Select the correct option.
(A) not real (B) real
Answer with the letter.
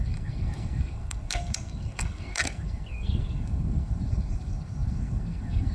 A